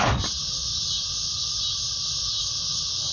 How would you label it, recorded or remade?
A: recorded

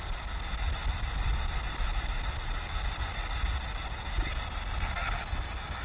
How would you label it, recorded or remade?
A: recorded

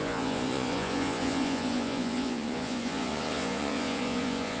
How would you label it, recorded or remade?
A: remade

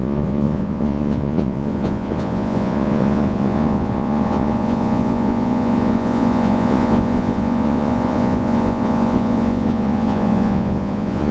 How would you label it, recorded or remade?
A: remade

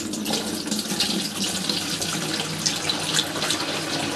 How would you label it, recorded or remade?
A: recorded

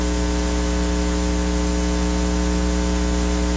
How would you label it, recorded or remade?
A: recorded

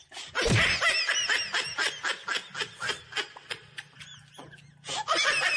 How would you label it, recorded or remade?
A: recorded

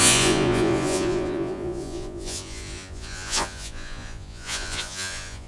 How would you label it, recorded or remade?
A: remade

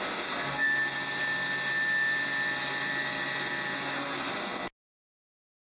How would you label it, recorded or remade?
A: recorded